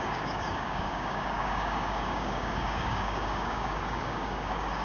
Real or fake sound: fake